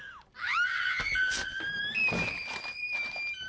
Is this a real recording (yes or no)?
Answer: yes